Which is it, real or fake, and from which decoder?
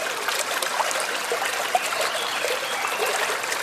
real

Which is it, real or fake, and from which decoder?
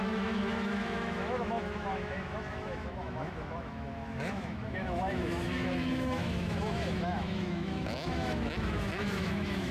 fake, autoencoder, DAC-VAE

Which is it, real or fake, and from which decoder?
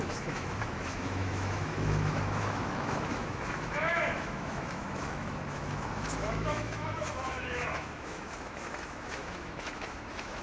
fake, autoencoder, DAC-VAE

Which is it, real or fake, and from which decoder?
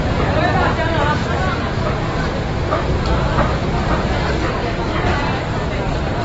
real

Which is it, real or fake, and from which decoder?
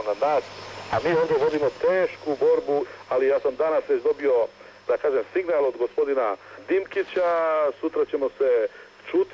real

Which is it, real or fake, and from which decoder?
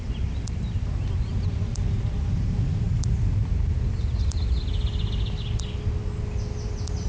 real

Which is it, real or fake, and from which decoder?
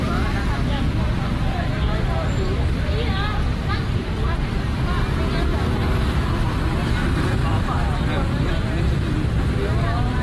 real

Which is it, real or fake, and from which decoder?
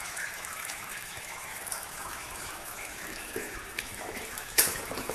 fake, autoencoder, DAC-VAE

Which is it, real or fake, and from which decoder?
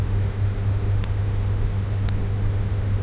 fake, autoencoder, DAC-VAE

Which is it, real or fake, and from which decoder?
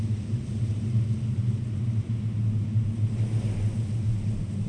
real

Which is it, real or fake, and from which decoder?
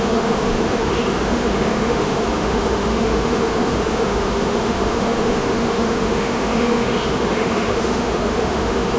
fake, autoencoder, DAC-VAE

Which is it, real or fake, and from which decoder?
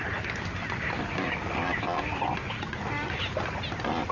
real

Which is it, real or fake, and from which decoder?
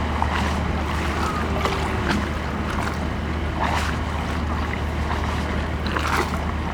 real